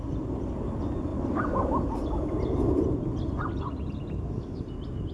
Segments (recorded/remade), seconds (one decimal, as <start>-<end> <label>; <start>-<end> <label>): 0.0-1.1 recorded; 1.1-4.2 remade; 4.2-5.1 recorded